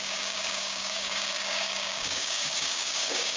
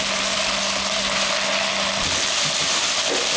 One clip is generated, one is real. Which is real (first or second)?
second